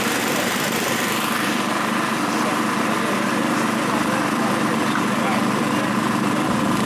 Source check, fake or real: fake